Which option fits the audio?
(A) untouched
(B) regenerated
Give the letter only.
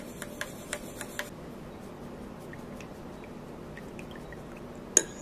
A